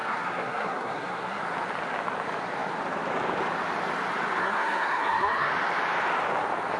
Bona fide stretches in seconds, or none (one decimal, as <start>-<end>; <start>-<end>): 1.4-4.4; 5.5-6.8